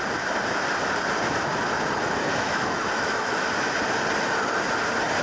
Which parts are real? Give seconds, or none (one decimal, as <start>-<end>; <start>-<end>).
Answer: 0.0-2.3; 3.7-5.2